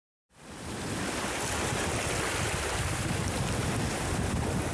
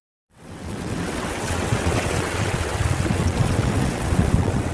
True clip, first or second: first